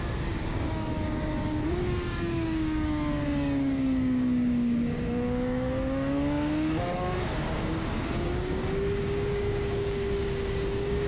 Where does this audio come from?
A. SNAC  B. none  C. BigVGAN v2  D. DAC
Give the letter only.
D